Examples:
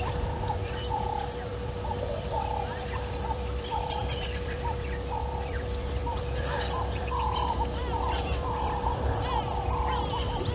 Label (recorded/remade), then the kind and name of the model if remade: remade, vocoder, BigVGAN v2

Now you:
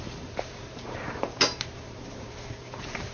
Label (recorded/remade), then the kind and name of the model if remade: remade, vocoder, BigVGAN v2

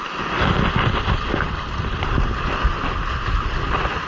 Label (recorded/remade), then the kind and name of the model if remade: recorded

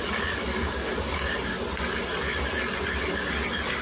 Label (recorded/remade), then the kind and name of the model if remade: recorded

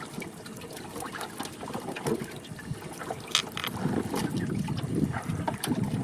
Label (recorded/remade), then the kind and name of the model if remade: recorded